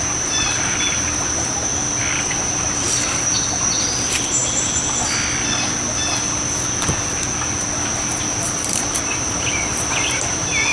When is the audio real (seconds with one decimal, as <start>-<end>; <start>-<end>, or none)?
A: 1.7-2.3; 4.4-7.9